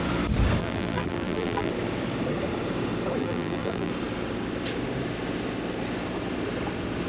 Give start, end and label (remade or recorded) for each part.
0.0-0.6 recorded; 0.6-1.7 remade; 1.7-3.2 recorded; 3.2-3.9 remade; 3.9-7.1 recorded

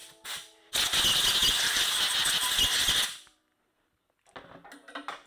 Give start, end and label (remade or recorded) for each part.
0.0-1.4 recorded; 1.4-2.0 remade; 2.0-5.3 recorded

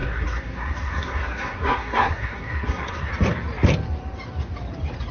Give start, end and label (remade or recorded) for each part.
0.0-3.1 remade; 3.1-5.1 recorded

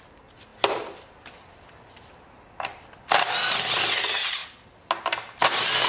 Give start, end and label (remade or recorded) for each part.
0.0-5.9 recorded

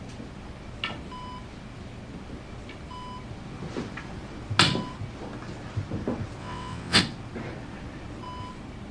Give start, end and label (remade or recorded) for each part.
0.0-6.4 recorded; 6.4-7.0 remade; 7.0-8.9 recorded

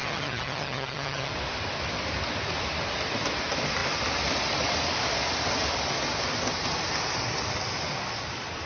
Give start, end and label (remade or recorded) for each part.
0.0-1.3 remade; 1.3-8.7 recorded

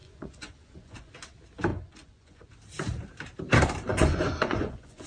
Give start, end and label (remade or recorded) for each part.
0.0-1.1 remade; 1.1-1.7 recorded; 1.7-2.5 remade; 2.5-3.9 recorded; 3.9-5.1 remade

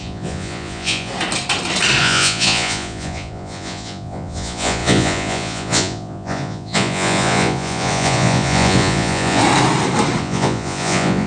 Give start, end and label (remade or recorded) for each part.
0.0-1.1 remade; 1.1-2.0 recorded; 2.0-9.4 remade; 9.4-10.2 recorded; 10.2-11.3 remade